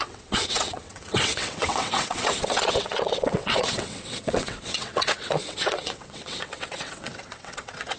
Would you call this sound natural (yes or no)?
no